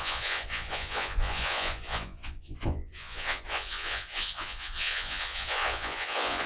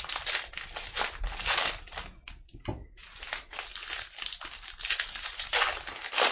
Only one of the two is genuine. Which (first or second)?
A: second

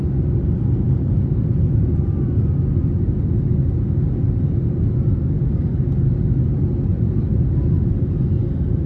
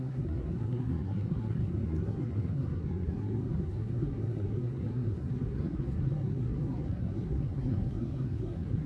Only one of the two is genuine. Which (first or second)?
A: first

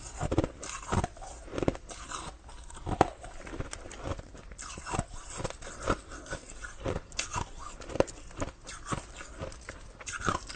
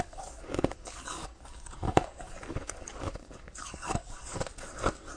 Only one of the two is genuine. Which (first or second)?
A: first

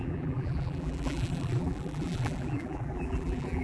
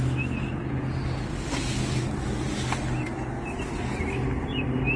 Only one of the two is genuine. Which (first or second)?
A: second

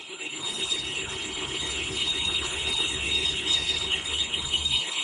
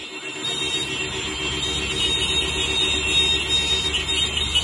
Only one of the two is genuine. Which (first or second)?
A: second